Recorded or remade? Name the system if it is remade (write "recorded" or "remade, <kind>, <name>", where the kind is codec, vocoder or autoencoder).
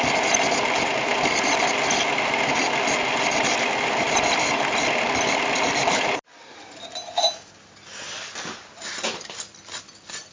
recorded